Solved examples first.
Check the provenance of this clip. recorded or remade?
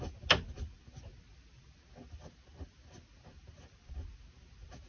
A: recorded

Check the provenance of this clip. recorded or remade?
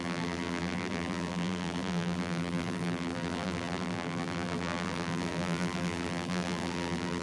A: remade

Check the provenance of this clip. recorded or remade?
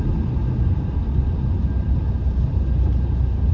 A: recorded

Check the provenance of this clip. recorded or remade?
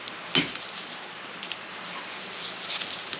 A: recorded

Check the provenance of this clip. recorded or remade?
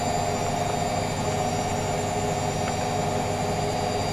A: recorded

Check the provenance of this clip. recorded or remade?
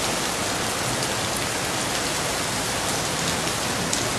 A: recorded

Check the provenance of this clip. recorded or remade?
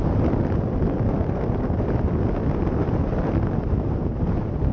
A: recorded